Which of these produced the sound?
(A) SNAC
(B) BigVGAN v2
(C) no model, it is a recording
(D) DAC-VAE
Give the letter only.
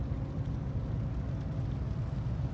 C